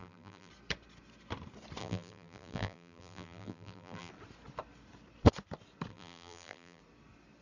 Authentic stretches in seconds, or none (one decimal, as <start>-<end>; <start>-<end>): 0.5-1.8; 4.1-5.9; 6.8-7.4